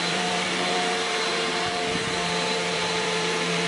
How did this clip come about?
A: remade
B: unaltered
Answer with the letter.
A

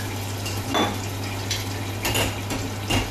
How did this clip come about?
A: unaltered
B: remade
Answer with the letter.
A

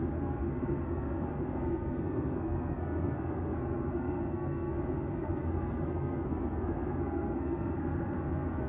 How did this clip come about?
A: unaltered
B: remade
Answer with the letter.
B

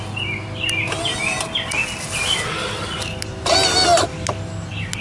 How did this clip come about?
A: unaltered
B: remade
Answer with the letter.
A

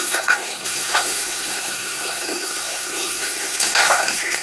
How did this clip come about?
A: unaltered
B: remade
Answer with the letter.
B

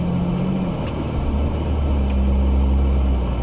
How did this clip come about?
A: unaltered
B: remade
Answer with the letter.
A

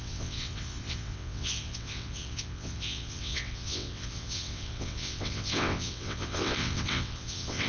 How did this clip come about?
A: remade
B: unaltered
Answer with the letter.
A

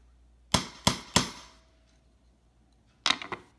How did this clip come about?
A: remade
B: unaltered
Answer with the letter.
B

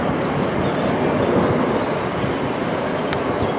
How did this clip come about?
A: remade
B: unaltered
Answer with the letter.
B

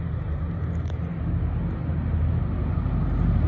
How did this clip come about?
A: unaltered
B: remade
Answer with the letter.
A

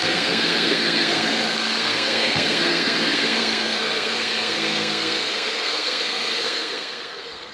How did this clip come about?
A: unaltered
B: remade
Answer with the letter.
B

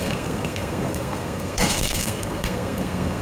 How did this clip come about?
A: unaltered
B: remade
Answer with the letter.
B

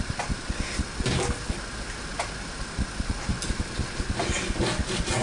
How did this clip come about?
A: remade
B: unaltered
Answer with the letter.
B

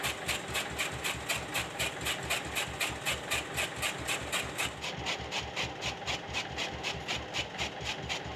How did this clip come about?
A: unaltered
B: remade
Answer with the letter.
A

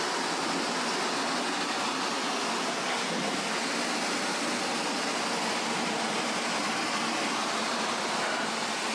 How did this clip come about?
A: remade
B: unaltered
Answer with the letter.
B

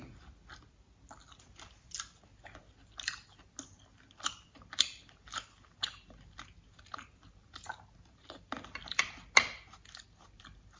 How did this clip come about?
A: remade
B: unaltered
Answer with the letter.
B